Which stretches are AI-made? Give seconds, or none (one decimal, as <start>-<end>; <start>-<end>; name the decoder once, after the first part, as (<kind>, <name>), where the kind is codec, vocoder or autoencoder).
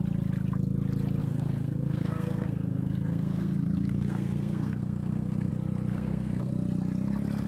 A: 1.2-5.5 (codec, SNAC); 5.9-6.5